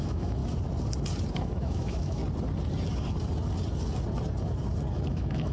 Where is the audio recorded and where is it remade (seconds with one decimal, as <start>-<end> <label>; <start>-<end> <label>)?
0.0-0.4 remade; 0.4-1.3 recorded; 1.3-2.2 remade; 2.2-5.1 recorded; 5.1-5.5 remade